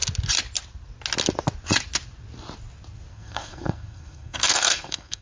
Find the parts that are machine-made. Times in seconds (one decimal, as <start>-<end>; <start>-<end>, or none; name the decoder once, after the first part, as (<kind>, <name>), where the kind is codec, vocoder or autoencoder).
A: 3.1-5.2 (codec, SNAC)